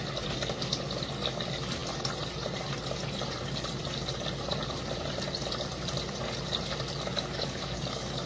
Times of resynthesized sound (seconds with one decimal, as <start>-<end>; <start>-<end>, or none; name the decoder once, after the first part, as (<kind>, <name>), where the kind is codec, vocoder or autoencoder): 7.1-8.3 (codec, DAC)